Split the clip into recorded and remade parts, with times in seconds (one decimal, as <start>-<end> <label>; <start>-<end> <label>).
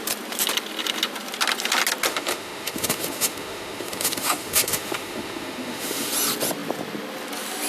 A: 0.0-2.1 recorded; 2.1-6.1 remade; 6.1-7.7 recorded